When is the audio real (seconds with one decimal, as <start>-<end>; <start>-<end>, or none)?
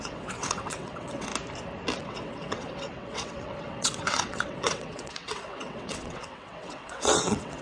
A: 1.3-2.0